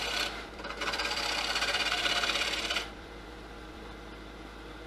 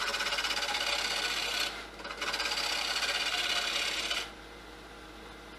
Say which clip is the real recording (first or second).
second